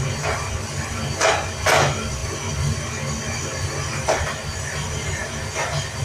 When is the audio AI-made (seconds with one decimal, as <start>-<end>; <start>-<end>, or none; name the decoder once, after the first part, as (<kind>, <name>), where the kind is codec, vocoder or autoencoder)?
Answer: none